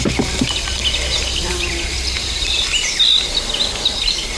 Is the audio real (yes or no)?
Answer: yes